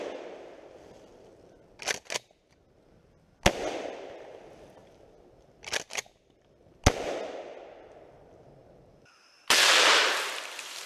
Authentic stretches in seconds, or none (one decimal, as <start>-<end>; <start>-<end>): 0.0-4.8; 6.7-10.9